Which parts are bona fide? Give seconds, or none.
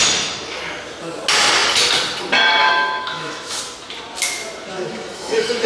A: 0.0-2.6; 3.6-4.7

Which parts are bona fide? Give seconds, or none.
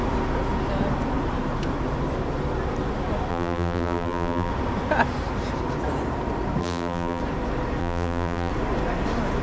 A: 0.0-3.3; 4.5-6.6; 7.2-7.8; 8.5-9.4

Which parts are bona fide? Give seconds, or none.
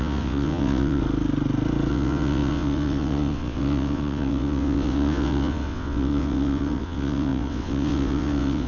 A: 1.0-1.9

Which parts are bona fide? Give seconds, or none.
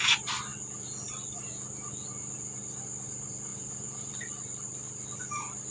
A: 0.0-3.5; 4.1-5.7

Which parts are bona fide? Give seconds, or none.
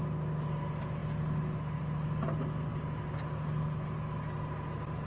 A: 0.0-5.1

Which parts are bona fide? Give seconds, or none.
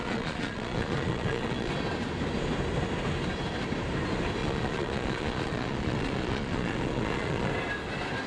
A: 1.7-4.4; 7.5-8.3